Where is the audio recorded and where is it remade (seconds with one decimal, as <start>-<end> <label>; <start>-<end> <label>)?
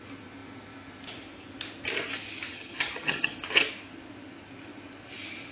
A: 0.0-2.5 recorded; 2.5-3.4 remade; 3.4-5.5 recorded